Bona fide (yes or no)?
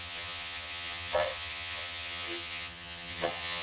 no